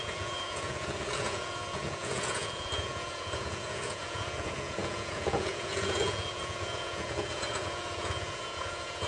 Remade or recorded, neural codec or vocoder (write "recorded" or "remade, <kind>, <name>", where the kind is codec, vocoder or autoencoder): remade, vocoder, Vocos